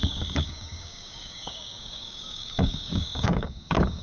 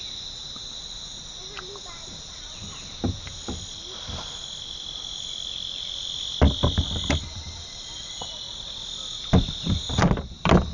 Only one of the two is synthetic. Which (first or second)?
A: first